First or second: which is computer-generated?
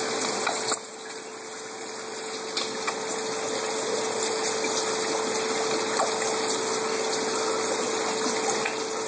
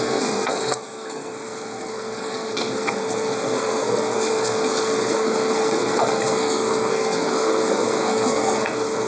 second